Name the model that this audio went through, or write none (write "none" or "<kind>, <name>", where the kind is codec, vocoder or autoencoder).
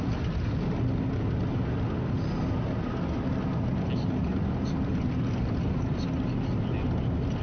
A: none